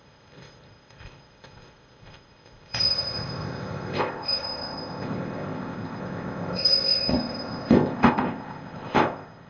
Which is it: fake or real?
fake